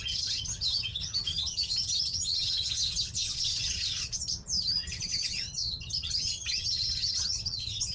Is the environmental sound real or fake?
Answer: fake